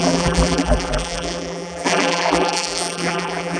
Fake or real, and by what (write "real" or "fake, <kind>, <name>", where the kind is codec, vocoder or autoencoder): fake, vocoder, BigVGAN v2